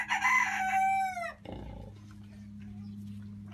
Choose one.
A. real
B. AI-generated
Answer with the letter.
A